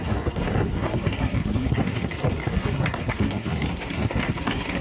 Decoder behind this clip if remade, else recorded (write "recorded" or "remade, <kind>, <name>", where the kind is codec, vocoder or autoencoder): remade, codec, SNAC